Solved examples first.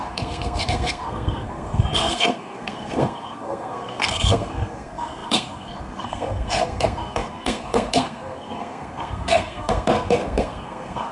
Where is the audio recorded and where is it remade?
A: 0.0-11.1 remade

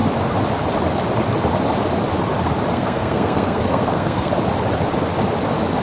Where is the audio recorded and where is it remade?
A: 0.0-2.7 recorded; 2.7-4.3 remade; 4.3-5.8 recorded